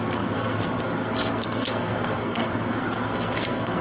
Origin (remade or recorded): remade